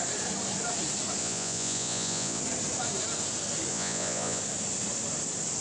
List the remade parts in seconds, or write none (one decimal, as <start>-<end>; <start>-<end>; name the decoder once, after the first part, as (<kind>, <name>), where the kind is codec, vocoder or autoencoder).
1.2-2.4 (vocoder, Vocos); 3.7-4.4